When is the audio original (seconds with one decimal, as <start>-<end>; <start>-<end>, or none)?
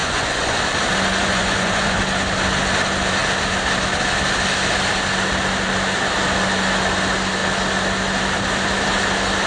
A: 0.6-1.2; 2.0-9.5